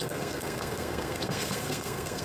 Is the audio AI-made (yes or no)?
yes